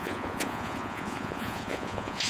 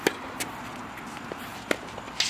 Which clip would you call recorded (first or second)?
second